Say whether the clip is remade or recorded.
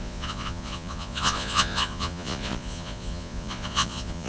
remade